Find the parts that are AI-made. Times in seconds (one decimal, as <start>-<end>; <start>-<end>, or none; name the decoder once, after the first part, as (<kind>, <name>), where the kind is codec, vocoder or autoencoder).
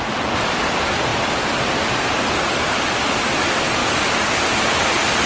3.8-4.3 (vocoder, BigVGAN v2)